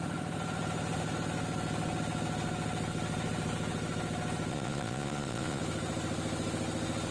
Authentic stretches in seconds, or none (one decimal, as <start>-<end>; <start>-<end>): 0.0-4.5; 5.6-7.1